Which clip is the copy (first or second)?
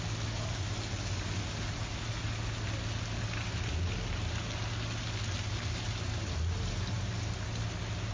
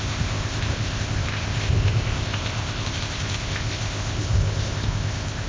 second